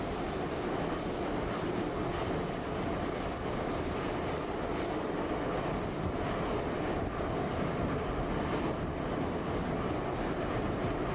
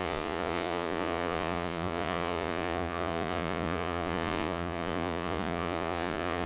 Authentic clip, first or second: first